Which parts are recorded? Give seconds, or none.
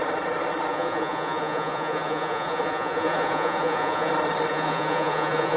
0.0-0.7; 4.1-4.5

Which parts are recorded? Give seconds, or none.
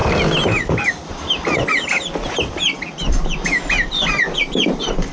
0.0-5.1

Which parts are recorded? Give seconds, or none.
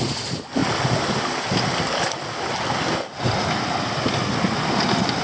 0.0-5.2